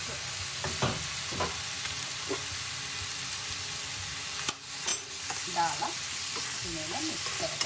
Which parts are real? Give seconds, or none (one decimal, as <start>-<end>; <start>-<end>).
0.0-7.7